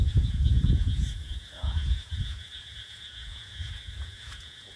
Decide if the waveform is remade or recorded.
remade